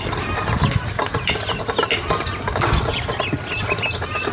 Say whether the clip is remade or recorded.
recorded